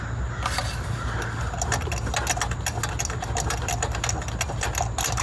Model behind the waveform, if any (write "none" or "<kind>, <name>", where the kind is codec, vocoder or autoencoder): none